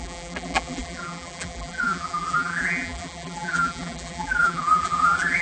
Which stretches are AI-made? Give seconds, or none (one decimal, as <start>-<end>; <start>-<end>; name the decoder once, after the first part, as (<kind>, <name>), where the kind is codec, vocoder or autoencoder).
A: 0.0-5.4 (vocoder, BigVGAN v2)